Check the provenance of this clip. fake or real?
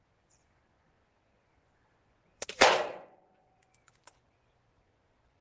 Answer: fake